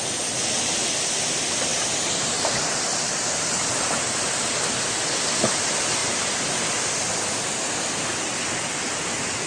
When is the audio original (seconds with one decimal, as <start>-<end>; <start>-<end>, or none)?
0.0-9.5